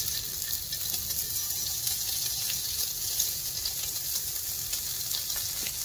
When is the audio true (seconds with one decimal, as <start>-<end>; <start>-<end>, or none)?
0.0-1.2; 4.0-5.8